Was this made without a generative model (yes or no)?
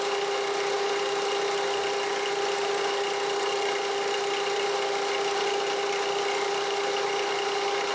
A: yes